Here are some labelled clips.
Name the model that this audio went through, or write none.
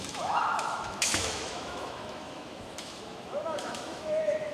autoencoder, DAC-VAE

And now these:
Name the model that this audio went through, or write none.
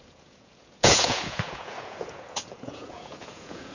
vocoder, Vocos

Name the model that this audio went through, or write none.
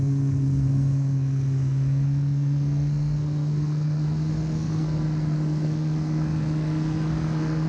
codec, SNAC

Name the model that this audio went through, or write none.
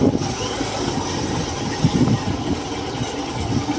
none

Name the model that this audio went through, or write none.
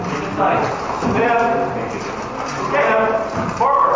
none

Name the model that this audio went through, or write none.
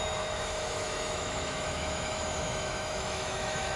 autoencoder, DAC-VAE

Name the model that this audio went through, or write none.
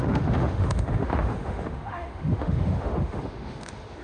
autoencoder, DAC-VAE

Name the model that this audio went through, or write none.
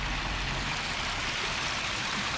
none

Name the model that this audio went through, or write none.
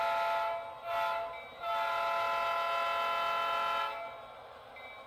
none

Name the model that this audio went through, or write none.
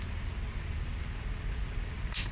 none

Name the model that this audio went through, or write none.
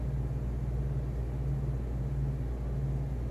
none